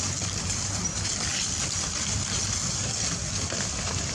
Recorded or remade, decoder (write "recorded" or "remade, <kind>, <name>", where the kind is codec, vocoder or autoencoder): recorded